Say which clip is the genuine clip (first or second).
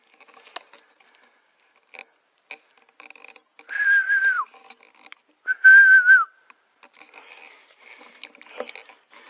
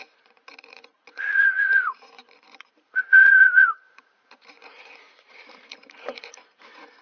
first